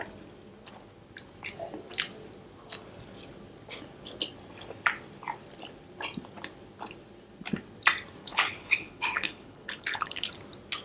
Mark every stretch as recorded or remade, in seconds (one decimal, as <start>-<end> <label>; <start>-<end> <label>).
0.0-8.2 recorded; 8.2-10.3 remade; 10.3-10.8 recorded